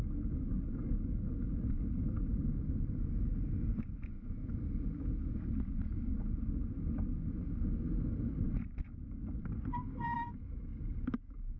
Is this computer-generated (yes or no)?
no